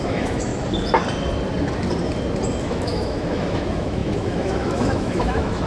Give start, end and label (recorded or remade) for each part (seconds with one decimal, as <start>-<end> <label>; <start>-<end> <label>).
0.0-0.5 remade; 0.5-2.6 recorded; 2.6-5.7 remade